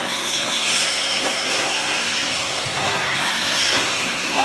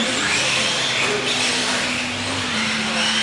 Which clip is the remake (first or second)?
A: first